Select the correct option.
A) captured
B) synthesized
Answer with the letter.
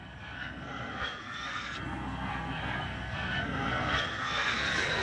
B